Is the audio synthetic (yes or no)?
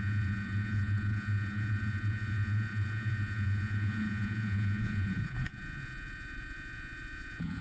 yes